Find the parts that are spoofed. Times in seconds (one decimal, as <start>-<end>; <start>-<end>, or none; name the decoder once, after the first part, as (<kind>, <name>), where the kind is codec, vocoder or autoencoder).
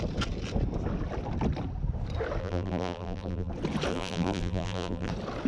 2.4-3.5 (vocoder, BigVGAN v2); 3.9-5.1